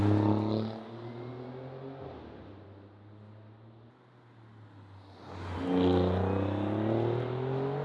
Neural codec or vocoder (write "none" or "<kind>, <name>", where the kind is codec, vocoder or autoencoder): none